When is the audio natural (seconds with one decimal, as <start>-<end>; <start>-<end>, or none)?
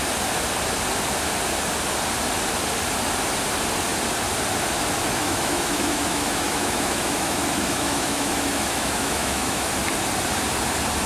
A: 0.0-5.2; 9.7-11.1